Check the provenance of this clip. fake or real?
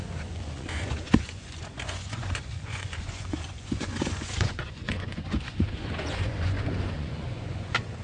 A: fake